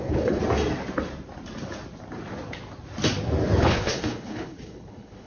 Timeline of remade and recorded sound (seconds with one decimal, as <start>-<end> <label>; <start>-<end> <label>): 0.0-0.4 remade; 0.4-3.6 recorded; 3.6-5.3 remade